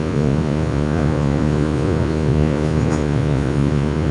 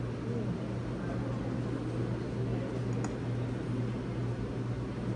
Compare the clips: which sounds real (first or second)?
second